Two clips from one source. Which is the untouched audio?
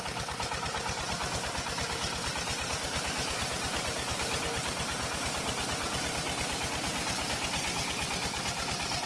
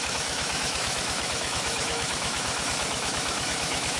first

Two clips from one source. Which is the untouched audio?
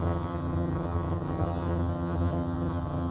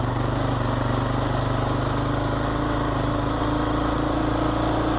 second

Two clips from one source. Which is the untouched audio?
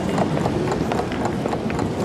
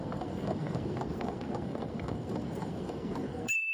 first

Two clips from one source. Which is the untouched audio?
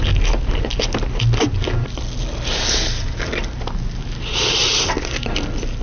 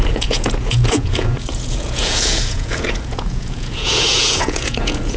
first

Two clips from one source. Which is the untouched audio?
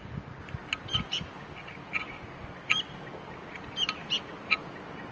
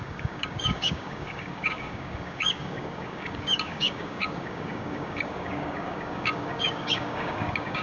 first